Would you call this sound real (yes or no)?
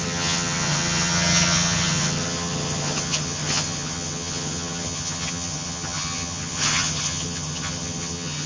no